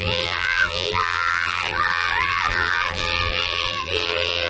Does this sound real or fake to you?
fake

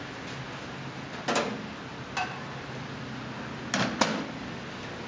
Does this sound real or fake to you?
real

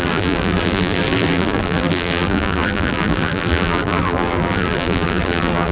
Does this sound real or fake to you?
fake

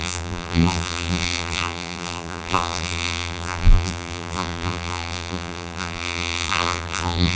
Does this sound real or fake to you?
fake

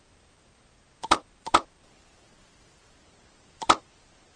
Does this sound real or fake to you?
fake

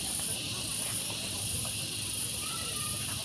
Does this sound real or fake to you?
fake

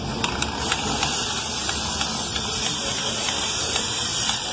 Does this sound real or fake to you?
real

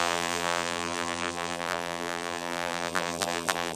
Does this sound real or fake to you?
fake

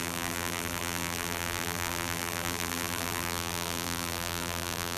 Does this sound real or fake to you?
fake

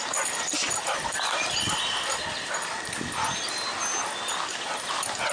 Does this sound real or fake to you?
real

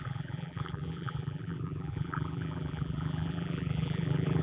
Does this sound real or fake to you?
fake